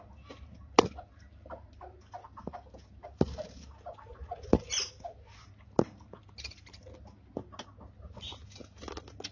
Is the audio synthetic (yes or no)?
no